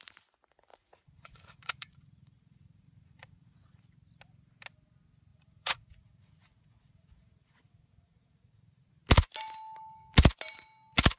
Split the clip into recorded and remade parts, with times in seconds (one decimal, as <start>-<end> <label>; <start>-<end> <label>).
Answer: 0.0-0.7 recorded; 0.7-3.8 remade; 3.8-5.3 recorded; 5.3-8.9 remade; 8.9-11.2 recorded